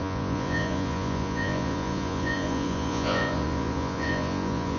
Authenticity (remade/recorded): remade